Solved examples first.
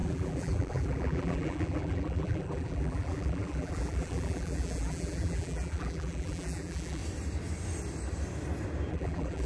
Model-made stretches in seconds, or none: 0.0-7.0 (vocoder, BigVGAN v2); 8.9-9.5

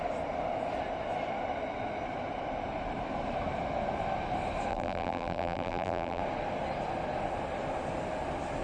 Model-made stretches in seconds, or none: 4.7-6.2 (vocoder, BigVGAN v2)

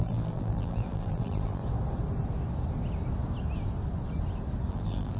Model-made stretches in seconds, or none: 0.0-1.6 (vocoder, BigVGAN v2); 4.7-5.2